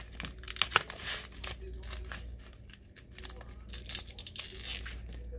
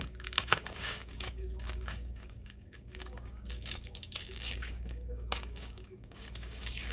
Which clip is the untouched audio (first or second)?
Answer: first